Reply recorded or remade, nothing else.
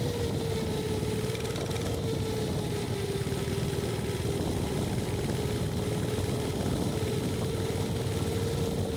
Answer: recorded